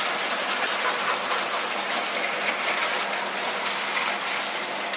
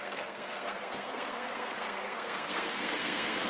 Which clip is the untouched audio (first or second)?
first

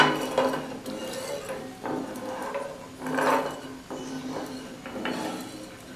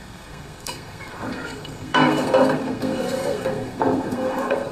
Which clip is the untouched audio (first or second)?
first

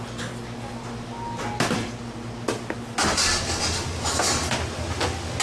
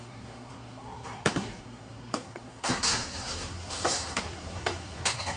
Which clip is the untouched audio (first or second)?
first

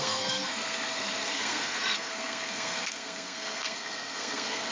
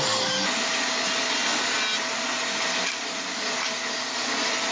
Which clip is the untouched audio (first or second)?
second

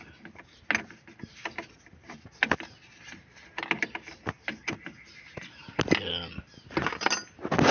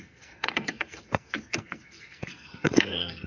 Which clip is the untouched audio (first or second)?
first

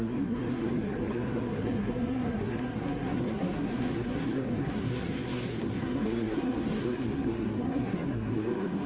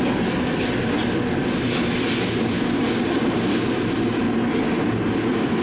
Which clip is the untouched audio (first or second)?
second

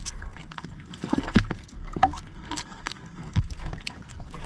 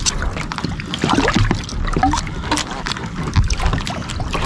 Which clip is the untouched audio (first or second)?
second